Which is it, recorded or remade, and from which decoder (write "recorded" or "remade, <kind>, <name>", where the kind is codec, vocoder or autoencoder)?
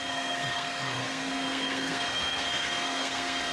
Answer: remade, codec, SNAC